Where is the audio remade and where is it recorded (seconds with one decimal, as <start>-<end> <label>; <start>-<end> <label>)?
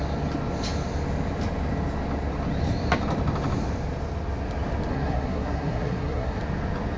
0.0-4.9 recorded; 4.9-6.4 remade; 6.4-7.0 recorded